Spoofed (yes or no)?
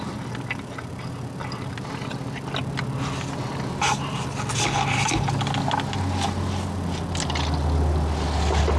no